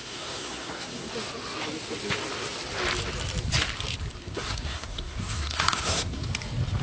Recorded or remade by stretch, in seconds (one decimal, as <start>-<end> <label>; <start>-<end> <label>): 0.0-1.1 remade; 1.1-4.2 recorded; 4.2-6.2 remade; 6.2-6.8 recorded